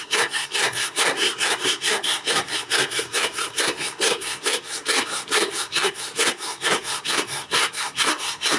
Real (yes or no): no